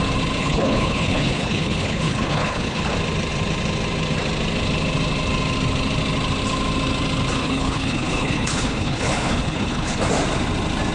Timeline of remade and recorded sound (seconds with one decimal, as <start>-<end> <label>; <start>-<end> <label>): 0.0-0.4 recorded; 0.4-2.9 remade; 2.9-7.4 recorded; 7.4-10.0 remade; 10.0-10.9 recorded